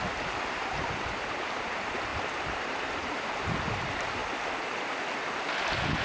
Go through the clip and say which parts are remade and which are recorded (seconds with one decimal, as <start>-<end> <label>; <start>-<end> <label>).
0.0-4.2 remade; 4.2-6.0 recorded